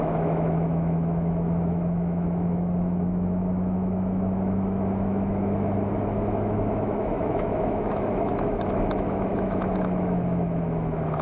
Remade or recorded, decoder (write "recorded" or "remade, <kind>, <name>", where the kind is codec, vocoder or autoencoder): remade, autoencoder, DAC-VAE